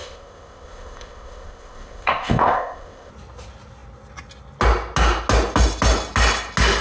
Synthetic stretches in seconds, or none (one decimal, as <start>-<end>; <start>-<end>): 0.0-3.1